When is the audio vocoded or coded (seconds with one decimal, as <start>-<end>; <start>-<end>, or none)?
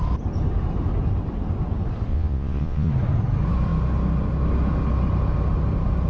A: 2.1-2.9